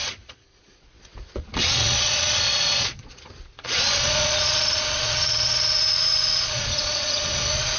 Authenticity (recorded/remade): remade